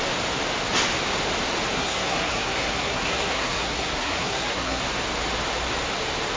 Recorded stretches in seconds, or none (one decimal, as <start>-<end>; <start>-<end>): 0.0-1.7; 4.8-6.4